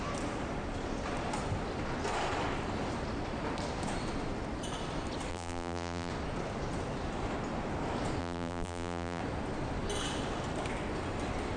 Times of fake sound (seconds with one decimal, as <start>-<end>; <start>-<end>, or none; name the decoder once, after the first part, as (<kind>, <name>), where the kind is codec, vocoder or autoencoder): 5.3-6.1 (vocoder, BigVGAN v2); 8.2-9.2